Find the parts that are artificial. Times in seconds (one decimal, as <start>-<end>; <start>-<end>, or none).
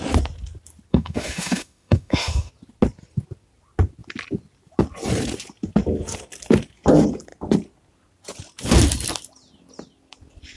0.9-2.5